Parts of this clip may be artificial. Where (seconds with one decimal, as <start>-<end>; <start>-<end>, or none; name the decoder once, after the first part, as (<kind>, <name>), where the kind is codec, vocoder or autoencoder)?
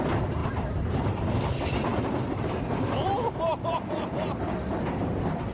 0.4-1.5 (vocoder, BigVGAN v2); 1.9-4.7